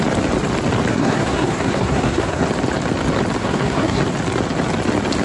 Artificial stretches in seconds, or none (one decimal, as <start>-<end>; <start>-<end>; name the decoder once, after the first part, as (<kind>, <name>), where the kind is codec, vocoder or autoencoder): 0.9-2.4 (codec, SNAC); 3.4-4.0